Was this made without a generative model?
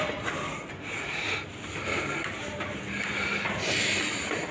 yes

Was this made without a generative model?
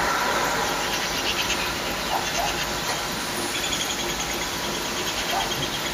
yes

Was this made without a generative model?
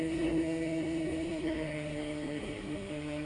no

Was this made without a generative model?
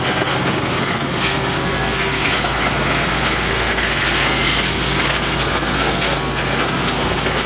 no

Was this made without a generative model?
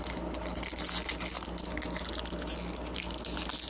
yes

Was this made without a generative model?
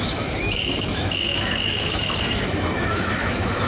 no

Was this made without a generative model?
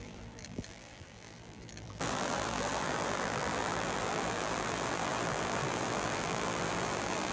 no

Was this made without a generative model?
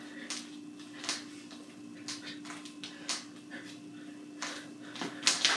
yes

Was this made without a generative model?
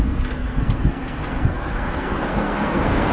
no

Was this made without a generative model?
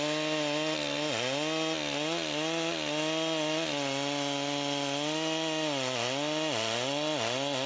yes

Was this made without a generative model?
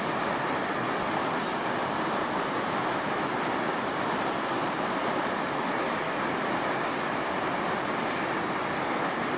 yes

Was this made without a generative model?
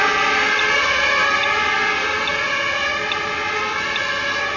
yes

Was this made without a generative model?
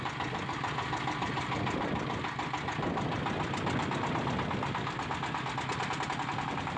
yes